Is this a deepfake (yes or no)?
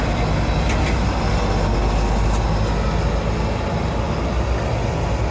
no